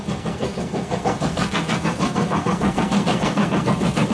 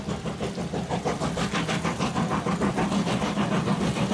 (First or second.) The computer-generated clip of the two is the first